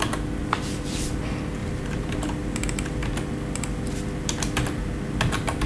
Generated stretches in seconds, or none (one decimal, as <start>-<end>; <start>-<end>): 0.4-1.2; 1.6-2.2